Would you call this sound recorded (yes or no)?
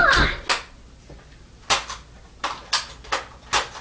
yes